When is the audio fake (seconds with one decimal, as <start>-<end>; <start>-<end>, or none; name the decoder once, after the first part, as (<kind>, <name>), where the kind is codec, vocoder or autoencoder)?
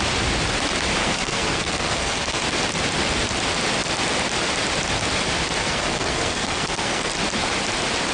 1.0-2.4 (codec, SNAC); 5.6-7.1